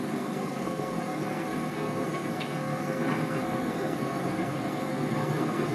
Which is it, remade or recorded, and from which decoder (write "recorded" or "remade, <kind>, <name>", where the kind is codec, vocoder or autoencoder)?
remade, codec, SNAC